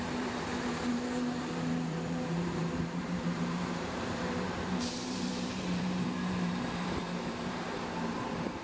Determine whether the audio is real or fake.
fake